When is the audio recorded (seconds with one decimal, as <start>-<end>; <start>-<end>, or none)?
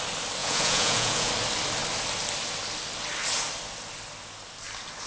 0.0-0.4; 1.3-5.1